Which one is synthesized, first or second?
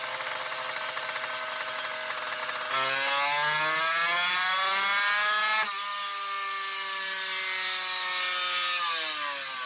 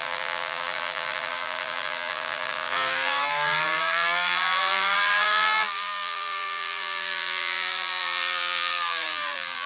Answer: second